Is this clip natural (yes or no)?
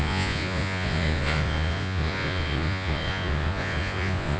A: no